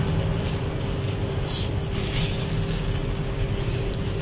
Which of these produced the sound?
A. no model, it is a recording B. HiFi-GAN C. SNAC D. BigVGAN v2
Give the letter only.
A